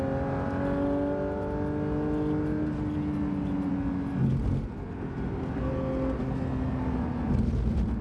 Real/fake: real